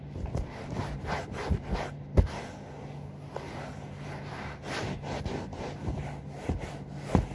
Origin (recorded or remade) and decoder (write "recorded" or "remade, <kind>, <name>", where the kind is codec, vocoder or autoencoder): recorded